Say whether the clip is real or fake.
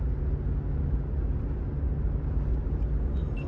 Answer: real